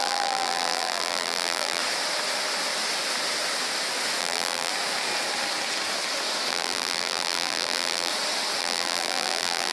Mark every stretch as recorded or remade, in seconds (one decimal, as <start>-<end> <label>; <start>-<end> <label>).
0.0-1.8 remade; 1.8-4.2 recorded; 4.2-4.7 remade; 4.7-6.5 recorded; 6.5-8.1 remade; 8.1-8.6 recorded; 8.6-9.7 remade